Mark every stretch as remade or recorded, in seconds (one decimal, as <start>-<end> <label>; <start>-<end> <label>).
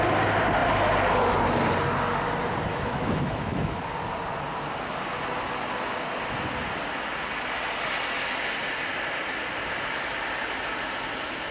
0.0-2.7 recorded; 2.7-3.8 remade; 3.8-11.5 recorded